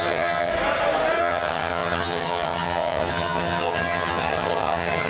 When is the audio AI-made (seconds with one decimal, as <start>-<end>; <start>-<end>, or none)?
0.0-0.5; 1.2-5.1